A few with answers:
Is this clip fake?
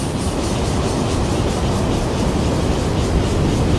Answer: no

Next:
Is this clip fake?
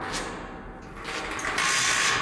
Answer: no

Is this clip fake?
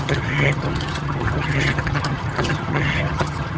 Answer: yes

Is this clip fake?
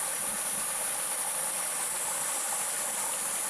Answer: no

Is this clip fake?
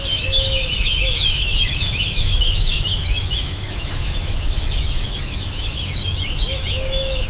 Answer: yes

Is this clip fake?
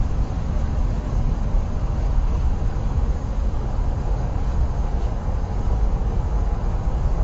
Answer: yes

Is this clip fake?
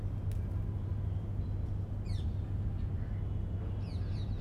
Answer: no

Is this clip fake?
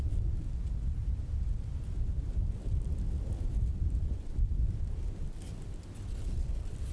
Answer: no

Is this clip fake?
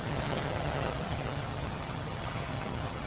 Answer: yes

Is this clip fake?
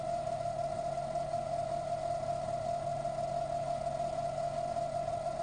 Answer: no